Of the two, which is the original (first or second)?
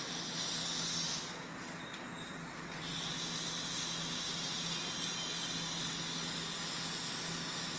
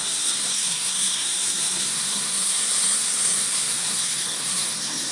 first